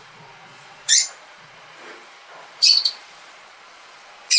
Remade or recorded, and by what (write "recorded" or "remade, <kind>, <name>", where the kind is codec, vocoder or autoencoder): remade, vocoder, Vocos